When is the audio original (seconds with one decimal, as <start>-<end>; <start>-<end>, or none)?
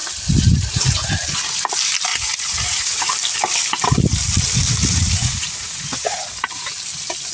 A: 0.0-2.1; 3.1-4.8; 6.3-7.3